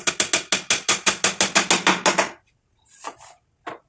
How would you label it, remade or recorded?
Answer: recorded